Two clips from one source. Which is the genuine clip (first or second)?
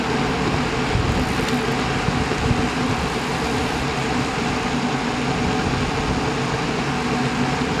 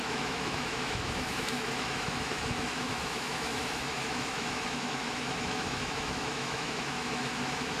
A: first